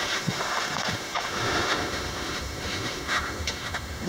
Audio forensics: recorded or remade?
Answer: remade